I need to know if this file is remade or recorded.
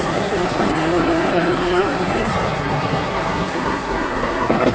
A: remade